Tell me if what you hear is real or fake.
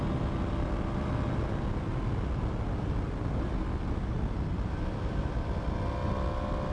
real